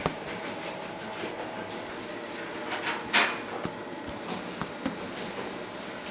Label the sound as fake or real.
real